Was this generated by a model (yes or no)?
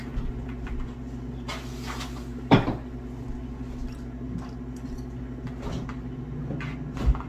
no